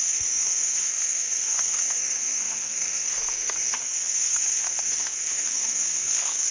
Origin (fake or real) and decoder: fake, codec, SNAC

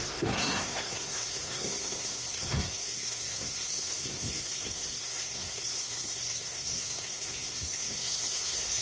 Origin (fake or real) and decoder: fake, codec, SNAC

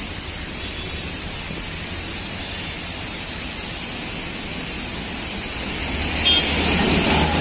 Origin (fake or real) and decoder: real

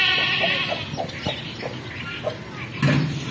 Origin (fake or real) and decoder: real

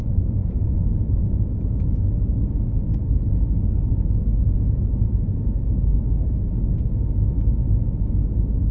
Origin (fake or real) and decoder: real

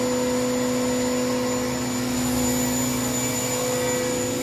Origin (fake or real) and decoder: real